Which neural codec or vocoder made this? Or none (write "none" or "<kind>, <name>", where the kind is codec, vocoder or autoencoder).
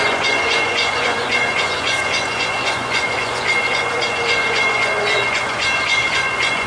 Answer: vocoder, Vocos